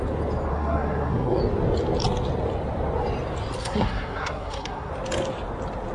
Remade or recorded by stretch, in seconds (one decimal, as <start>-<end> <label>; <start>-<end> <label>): 0.0-0.5 recorded; 0.5-1.4 remade; 1.4-3.6 recorded; 3.6-4.9 remade; 4.9-5.9 recorded